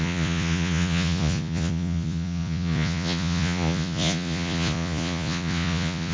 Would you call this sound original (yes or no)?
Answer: no